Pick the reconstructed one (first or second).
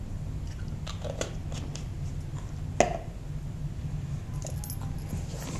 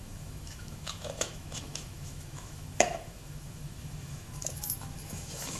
second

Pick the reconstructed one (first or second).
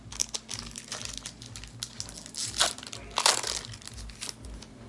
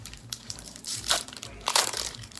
second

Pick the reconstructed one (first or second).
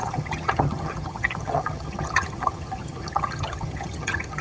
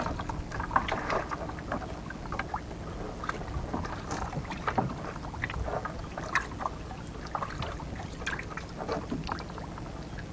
first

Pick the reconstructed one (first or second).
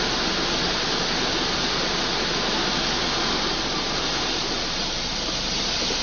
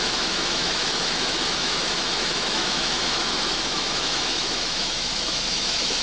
second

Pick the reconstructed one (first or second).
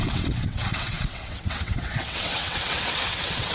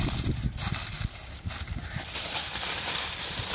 first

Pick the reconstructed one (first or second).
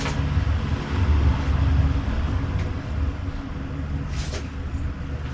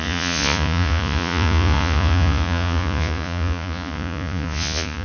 second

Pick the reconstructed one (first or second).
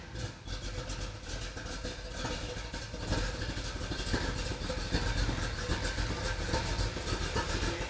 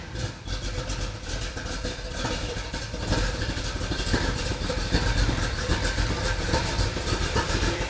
second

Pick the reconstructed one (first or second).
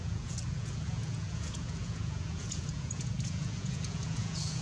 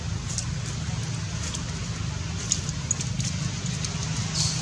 first